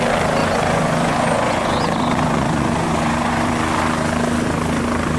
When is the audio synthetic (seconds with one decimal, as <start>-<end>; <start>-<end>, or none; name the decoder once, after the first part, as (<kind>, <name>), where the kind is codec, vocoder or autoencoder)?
0.4-3.5 (vocoder, Vocos)